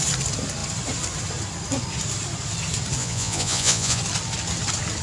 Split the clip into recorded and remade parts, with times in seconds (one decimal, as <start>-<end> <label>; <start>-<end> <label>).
0.0-3.0 recorded; 3.0-4.0 remade; 4.0-5.0 recorded